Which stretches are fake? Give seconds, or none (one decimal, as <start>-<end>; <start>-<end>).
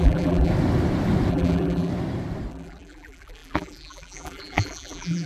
0.0-0.5; 1.3-1.9; 2.5-5.3